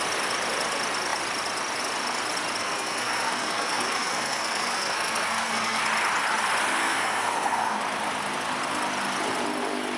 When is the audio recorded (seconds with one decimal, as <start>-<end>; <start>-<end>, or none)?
0.0-2.6; 5.8-6.8; 7.8-10.0

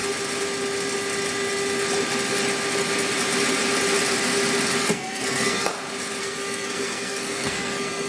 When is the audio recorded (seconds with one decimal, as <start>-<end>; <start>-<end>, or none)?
0.0-4.8; 5.7-6.2